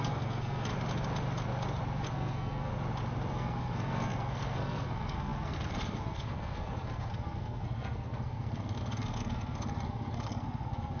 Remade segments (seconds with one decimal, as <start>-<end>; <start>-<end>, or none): 0.0-0.7; 2.1-2.7; 3.3-11.0